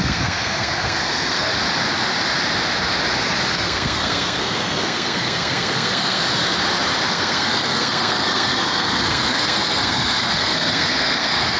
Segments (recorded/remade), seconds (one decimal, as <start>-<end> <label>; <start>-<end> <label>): 0.0-1.5 remade; 1.5-3.5 recorded; 3.5-6.2 remade; 6.2-7.1 recorded; 7.1-11.6 remade